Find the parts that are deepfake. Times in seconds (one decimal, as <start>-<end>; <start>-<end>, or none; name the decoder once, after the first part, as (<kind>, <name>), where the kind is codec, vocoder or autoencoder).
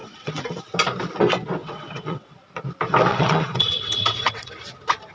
0.0-0.6 (vocoder, WaveNeXt); 1.6-2.3; 3.1-4.5